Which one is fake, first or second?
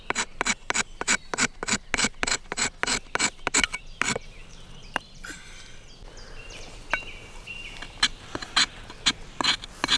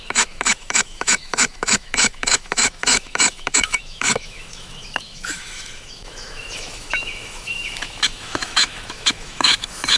second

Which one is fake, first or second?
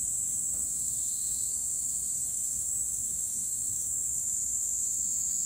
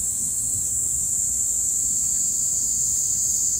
first